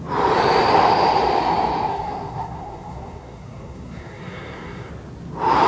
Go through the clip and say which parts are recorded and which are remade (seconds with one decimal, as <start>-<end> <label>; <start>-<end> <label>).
0.0-1.9 recorded; 1.9-4.9 remade; 4.9-5.7 recorded